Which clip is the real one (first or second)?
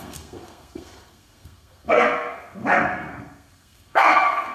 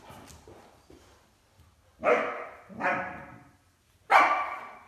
second